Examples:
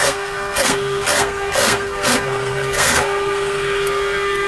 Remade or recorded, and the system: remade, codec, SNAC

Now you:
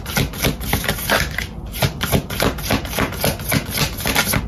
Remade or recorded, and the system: recorded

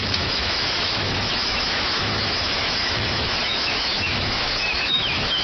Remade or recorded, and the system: remade, autoencoder, DAC-VAE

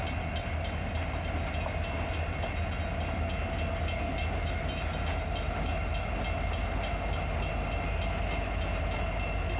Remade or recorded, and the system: recorded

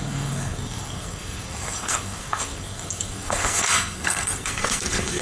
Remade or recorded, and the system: remade, codec, SNAC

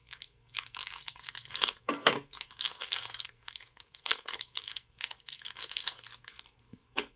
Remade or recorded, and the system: remade, codec, SNAC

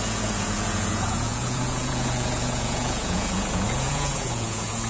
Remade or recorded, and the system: remade, vocoder, Vocos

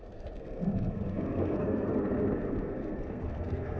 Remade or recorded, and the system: remade, codec, SNAC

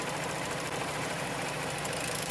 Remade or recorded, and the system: remade, vocoder, BigVGAN v2